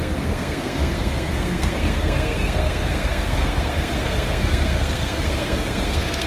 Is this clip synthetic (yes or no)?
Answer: yes